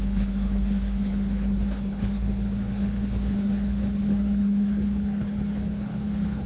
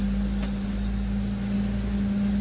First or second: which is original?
second